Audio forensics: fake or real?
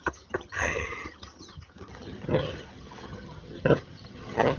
fake